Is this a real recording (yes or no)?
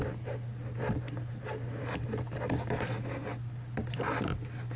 yes